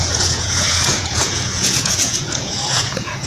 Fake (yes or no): yes